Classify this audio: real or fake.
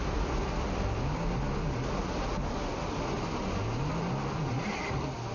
real